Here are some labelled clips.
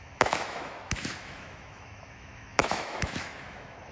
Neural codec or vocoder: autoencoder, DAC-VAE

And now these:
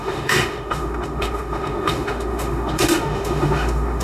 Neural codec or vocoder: autoencoder, DAC-VAE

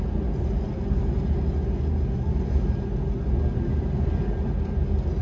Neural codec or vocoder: none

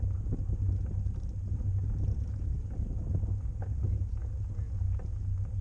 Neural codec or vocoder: none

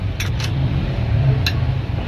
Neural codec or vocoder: none